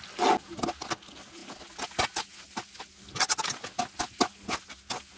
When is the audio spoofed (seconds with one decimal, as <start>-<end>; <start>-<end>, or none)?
none